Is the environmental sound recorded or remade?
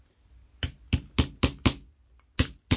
recorded